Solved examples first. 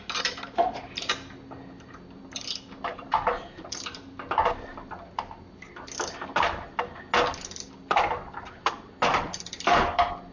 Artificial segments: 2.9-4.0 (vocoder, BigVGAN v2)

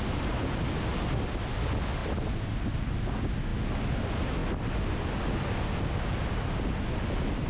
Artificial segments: none

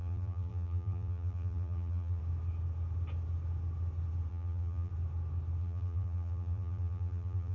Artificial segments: 0.0-2.2 (vocoder, BigVGAN v2); 4.3-4.9; 5.6-7.5

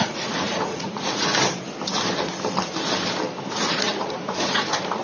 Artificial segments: 0.0-1.3 (vocoder, Vocos); 3.5-5.0

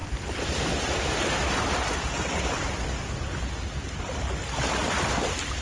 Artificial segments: 0.0-3.4 (vocoder, BigVGAN v2); 4.4-5.1

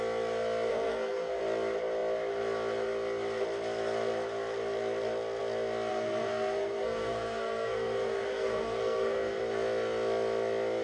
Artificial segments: 0.7-1.4 (codec, SNAC); 5.9-9.4

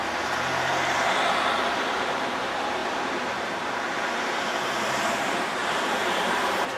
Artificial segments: 2.0-6.8 (vocoder, BigVGAN v2)

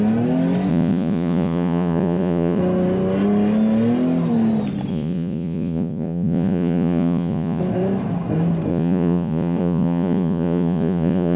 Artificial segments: 0.7-2.6 (vocoder, Vocos); 4.9-7.6; 8.7-11.4